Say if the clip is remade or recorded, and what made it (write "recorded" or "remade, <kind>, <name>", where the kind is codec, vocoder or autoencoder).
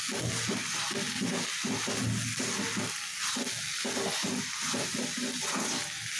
recorded